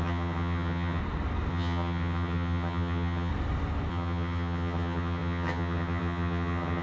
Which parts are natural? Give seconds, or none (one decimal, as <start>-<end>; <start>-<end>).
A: 1.0-1.5; 3.3-3.9